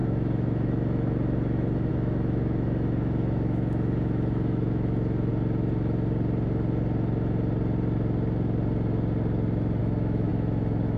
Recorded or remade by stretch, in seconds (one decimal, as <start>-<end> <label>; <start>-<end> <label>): 0.0-5.3 remade; 5.3-9.8 recorded; 9.8-11.0 remade